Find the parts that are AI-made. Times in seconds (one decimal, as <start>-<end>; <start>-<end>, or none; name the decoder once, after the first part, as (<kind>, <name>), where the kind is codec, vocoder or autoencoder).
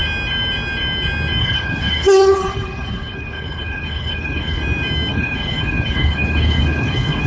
1.4-4.6 (codec, HILCodec); 5.1-7.3